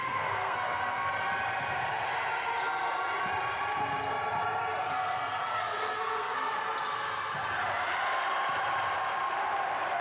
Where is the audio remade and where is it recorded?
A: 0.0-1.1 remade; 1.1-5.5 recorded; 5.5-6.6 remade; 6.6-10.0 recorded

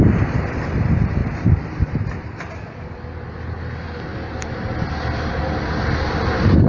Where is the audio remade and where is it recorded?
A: 0.0-6.7 recorded

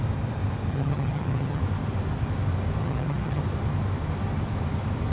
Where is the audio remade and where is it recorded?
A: 0.0-0.7 recorded; 0.7-1.6 remade; 1.6-2.8 recorded; 2.8-3.4 remade; 3.4-5.1 recorded

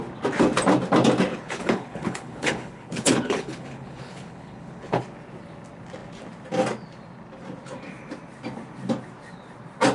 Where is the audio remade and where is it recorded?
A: 0.0-1.3 recorded; 1.3-5.0 remade; 5.0-9.9 recorded

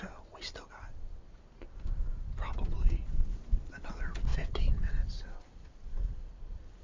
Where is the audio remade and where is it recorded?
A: 0.0-4.3 recorded; 4.3-5.5 remade; 5.5-6.8 recorded